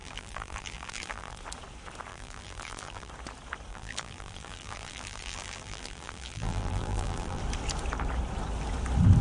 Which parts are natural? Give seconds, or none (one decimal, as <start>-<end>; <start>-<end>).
1.4-2.1; 3.1-3.7; 7.4-9.2